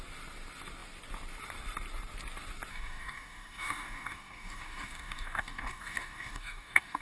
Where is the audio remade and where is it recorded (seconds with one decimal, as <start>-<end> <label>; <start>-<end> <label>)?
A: 0.0-2.7 recorded; 2.7-7.0 remade